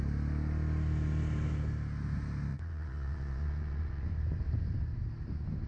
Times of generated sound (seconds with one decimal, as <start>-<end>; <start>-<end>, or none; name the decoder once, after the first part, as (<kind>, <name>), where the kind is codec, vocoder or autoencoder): 2.5-4.1 (vocoder, Vocos)